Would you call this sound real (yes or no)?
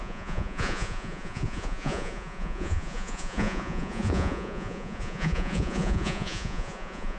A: no